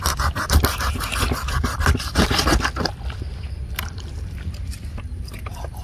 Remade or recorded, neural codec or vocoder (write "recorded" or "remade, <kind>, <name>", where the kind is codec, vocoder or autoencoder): recorded